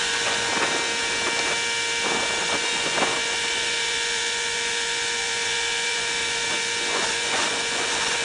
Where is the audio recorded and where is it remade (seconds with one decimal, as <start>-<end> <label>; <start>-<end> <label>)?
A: 0.0-0.5 remade; 0.5-2.4 recorded; 2.4-8.2 remade